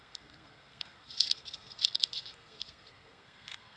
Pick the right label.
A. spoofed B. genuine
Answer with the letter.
A